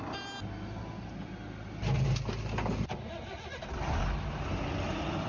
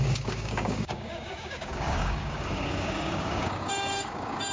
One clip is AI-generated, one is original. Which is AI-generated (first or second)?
second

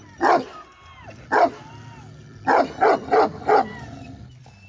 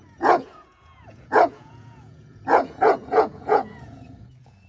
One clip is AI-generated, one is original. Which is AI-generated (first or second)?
second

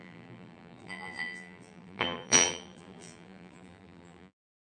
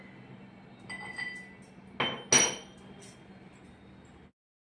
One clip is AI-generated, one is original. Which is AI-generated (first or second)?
first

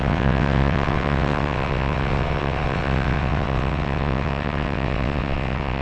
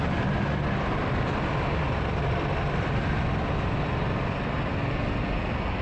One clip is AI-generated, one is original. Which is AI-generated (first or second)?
first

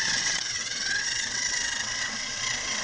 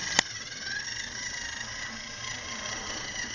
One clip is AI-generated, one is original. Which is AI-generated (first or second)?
first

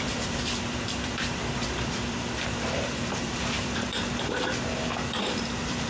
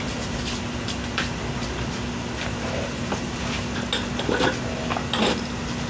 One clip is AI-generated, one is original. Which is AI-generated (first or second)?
first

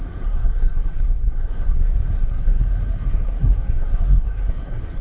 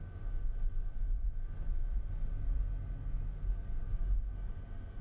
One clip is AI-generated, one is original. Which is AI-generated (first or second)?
first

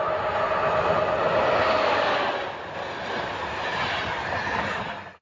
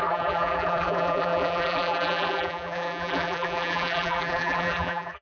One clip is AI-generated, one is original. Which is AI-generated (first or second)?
second